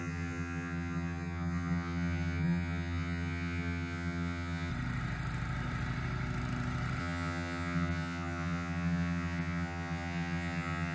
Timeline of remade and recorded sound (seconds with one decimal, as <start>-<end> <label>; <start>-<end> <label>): 0.0-4.7 remade; 4.7-7.0 recorded; 7.0-10.9 remade